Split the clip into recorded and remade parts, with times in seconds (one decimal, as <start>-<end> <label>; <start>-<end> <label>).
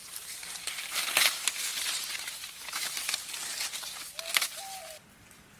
0.0-3.4 remade; 3.4-5.6 recorded